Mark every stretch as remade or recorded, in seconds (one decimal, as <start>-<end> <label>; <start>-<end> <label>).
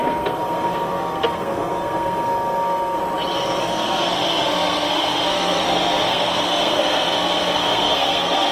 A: 0.0-3.0 remade; 3.0-3.6 recorded; 3.6-8.5 remade